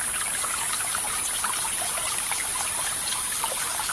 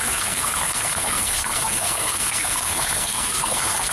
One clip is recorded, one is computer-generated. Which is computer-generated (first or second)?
second